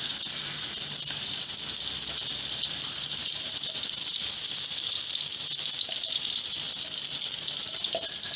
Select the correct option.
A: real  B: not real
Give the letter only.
A